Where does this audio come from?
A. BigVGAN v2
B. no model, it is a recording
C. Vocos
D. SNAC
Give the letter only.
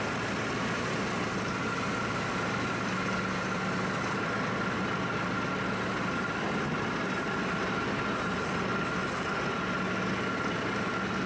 B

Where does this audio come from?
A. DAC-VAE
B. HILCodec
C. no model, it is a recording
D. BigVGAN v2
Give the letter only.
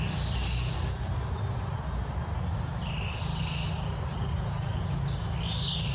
C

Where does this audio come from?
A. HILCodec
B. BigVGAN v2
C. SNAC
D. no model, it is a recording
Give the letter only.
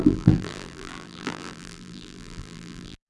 B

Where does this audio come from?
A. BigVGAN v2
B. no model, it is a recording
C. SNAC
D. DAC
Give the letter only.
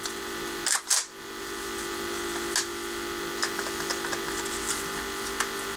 B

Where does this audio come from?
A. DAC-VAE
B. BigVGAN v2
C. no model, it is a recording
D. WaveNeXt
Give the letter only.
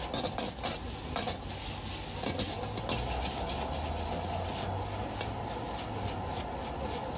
C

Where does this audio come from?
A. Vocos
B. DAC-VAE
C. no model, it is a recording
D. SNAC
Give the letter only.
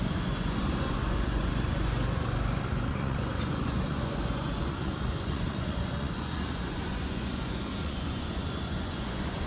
A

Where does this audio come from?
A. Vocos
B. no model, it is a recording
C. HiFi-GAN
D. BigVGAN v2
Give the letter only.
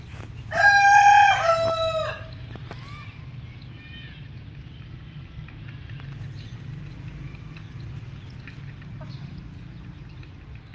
B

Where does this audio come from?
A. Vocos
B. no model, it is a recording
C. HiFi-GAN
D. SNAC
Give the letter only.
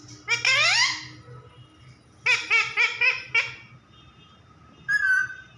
B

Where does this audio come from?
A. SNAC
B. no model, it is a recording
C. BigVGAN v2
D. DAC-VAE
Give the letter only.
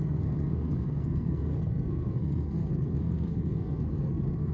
A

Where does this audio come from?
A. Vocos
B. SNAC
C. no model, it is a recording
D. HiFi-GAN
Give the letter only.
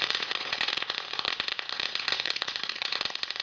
A